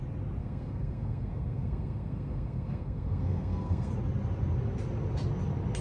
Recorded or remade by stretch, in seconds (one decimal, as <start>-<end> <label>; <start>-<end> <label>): 0.0-0.4 recorded; 0.4-3.9 remade; 3.9-5.8 recorded